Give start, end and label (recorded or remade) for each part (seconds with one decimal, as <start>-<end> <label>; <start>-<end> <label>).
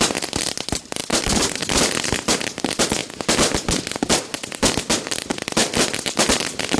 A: 0.0-1.0 recorded; 1.0-1.5 remade; 1.5-6.8 recorded